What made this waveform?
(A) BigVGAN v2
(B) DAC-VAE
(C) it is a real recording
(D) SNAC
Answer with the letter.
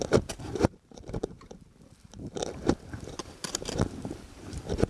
A